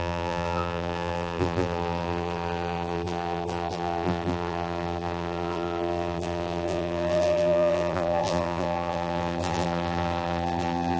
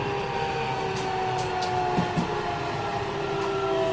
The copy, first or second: first